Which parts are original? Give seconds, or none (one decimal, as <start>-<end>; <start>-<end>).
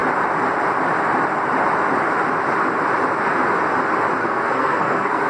0.0-4.2